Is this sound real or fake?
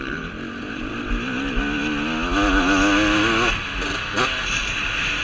real